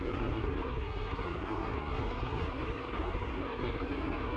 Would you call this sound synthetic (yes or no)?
yes